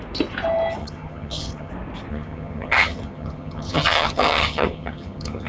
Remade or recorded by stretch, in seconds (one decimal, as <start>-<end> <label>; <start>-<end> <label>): 0.0-0.8 recorded; 0.8-1.7 remade; 1.7-2.1 recorded; 2.1-5.5 remade